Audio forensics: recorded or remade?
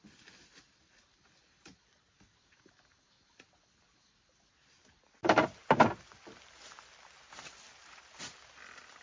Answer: recorded